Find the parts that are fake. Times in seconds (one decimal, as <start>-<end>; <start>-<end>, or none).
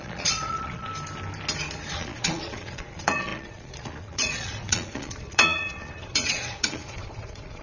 0.0-0.9; 1.9-7.6